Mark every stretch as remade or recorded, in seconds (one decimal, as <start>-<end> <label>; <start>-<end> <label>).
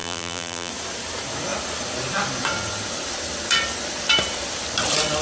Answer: 0.0-0.7 remade; 0.7-5.2 recorded